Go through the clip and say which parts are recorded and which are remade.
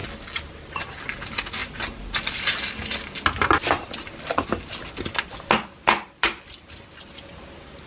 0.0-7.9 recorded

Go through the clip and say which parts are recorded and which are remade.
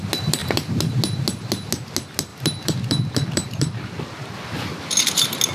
0.0-2.3 recorded; 2.3-5.0 remade; 5.0-5.5 recorded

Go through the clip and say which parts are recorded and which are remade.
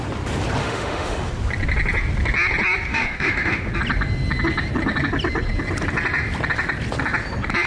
0.0-0.6 recorded; 0.6-1.3 remade; 1.3-2.9 recorded; 2.9-3.7 remade; 3.7-7.7 recorded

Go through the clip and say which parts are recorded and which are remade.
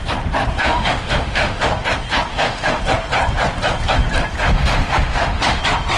0.0-0.6 recorded; 0.6-1.7 remade; 1.7-2.3 recorded; 2.3-2.8 remade; 2.8-4.4 recorded; 4.4-5.6 remade; 5.6-6.0 recorded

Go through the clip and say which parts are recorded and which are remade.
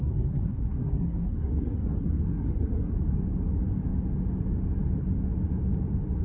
0.0-2.9 remade; 2.9-6.2 recorded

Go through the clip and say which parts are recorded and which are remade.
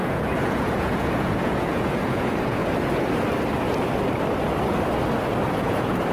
0.0-2.6 remade; 2.6-5.5 recorded; 5.5-6.1 remade